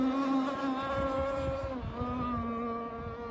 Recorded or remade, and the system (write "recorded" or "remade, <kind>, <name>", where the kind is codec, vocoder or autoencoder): recorded